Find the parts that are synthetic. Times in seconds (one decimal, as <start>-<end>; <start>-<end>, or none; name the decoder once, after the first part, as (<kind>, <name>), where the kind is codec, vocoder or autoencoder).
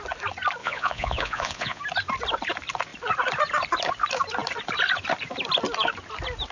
0.6-1.8 (vocoder, Vocos)